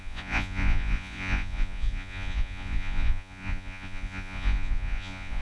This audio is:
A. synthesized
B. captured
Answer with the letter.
A